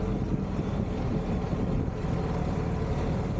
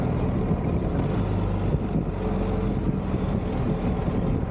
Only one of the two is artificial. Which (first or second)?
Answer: first